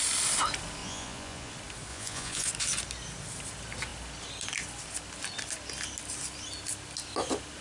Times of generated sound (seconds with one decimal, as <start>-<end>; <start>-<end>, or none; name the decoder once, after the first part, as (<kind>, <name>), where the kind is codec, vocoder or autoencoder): 0.8-1.5 (vocoder, Vocos); 1.9-2.5